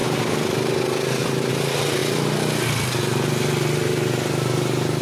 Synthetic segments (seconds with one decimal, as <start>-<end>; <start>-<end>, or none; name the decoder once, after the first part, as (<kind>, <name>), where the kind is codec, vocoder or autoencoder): none